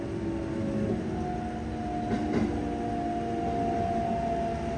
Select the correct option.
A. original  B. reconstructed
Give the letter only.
A